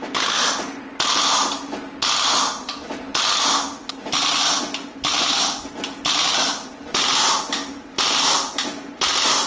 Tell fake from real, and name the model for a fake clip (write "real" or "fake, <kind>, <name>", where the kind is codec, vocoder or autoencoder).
real